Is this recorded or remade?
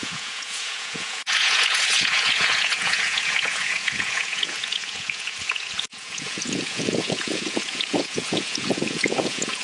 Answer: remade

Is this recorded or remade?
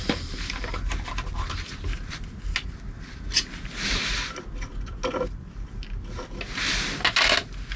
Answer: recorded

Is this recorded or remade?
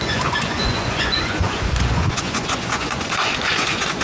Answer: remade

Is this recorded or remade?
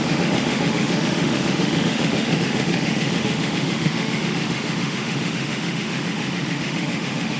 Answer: remade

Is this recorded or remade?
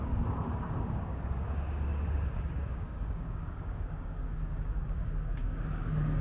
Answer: remade